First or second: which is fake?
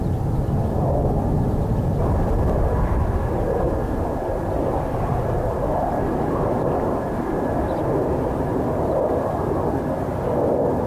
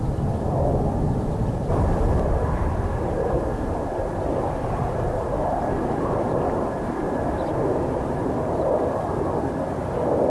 second